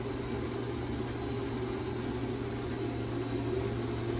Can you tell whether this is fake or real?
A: real